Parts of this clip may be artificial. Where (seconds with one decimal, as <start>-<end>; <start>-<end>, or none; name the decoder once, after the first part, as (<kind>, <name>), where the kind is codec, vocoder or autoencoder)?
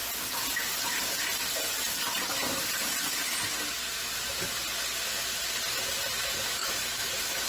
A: 6.6-7.1 (autoencoder, DAC-VAE)